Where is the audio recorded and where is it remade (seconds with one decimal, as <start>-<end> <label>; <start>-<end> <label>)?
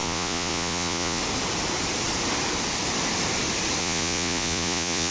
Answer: 0.0-1.2 remade; 1.2-3.8 recorded; 3.8-5.1 remade